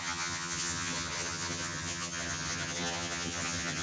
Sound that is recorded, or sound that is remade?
remade